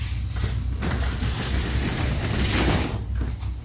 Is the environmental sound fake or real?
real